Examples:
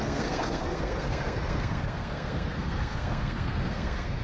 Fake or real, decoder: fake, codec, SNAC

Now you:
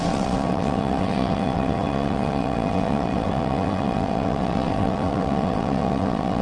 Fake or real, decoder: fake, vocoder, WaveNeXt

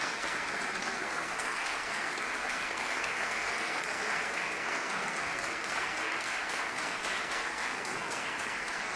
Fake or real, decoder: fake, codec, SNAC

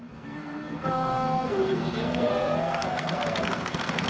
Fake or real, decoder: fake, codec, SNAC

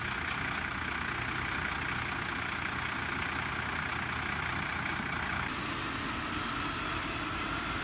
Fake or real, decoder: real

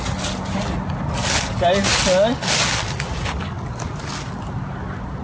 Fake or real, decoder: real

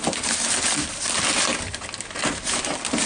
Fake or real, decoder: real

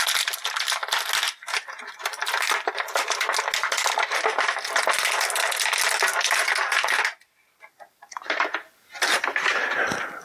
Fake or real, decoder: real